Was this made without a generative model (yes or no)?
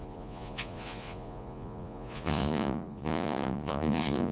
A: no